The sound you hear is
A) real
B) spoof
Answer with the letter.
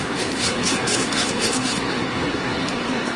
B